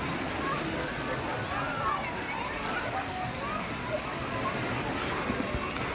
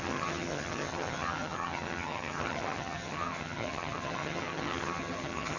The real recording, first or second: first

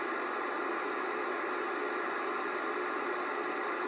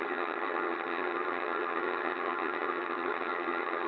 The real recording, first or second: first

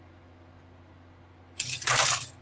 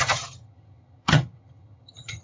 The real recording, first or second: first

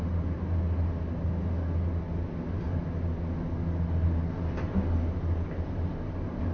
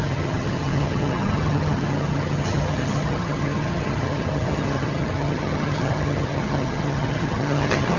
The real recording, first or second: first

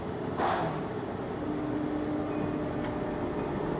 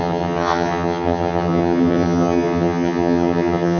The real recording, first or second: first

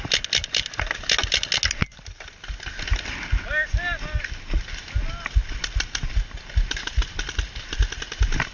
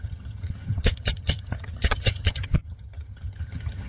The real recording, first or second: first